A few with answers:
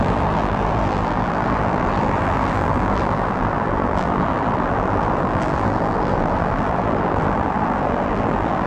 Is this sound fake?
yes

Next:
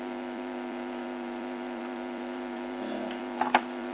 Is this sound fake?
yes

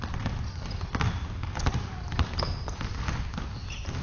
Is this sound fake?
yes